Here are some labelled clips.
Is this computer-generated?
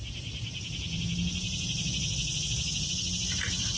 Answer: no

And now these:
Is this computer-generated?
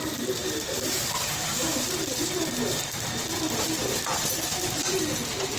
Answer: yes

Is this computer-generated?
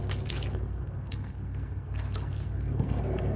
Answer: yes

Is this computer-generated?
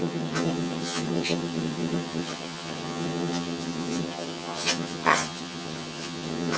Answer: yes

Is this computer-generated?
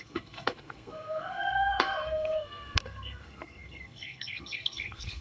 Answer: yes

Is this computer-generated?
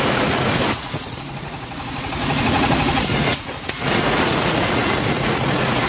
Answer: yes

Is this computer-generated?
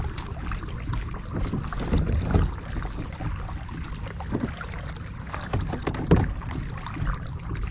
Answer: no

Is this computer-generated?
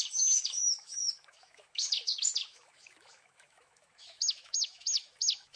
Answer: yes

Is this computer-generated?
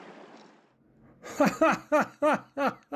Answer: no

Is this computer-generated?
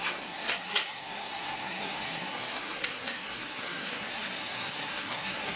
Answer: yes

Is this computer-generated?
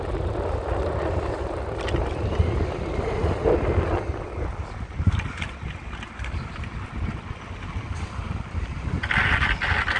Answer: no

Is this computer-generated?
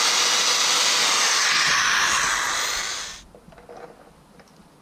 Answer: no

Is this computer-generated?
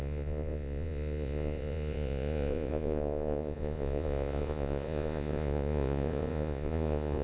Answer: yes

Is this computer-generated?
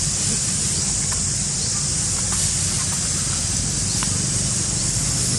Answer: no